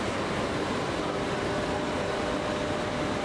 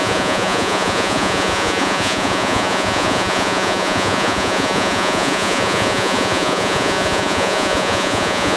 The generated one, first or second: second